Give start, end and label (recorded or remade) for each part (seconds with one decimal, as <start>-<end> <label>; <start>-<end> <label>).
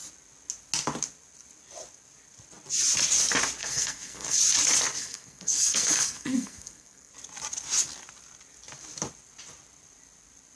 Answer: 0.0-3.6 recorded; 3.6-4.4 remade; 4.4-5.0 recorded; 5.0-7.1 remade; 7.1-10.6 recorded